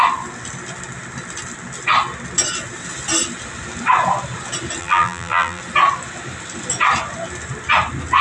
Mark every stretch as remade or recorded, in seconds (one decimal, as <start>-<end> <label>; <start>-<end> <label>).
0.0-4.8 recorded; 4.8-5.6 remade; 5.6-8.2 recorded